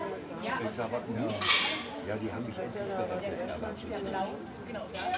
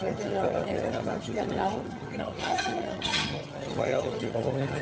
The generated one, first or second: second